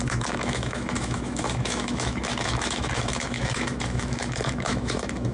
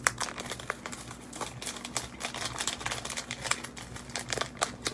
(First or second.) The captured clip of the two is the second